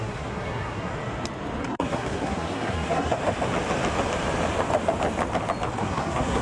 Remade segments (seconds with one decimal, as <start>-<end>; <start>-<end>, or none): 0.0-0.9; 1.6-3.2; 5.8-6.4